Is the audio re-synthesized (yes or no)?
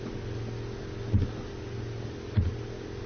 no